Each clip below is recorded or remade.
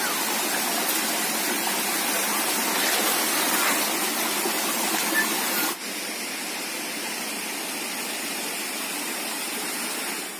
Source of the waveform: recorded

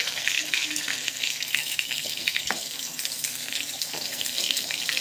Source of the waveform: remade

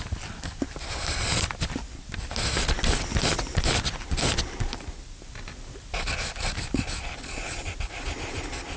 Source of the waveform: recorded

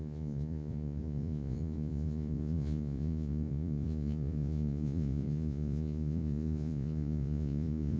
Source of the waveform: remade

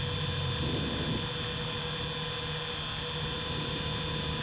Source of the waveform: recorded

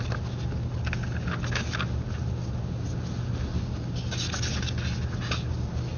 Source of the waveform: recorded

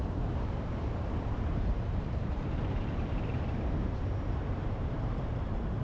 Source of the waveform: remade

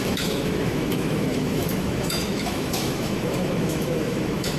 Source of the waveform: remade